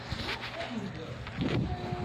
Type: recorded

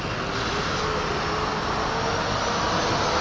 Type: recorded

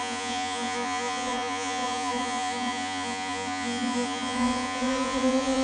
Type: remade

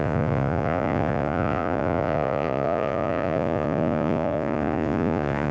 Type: remade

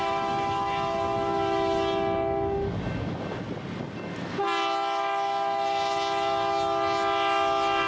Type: recorded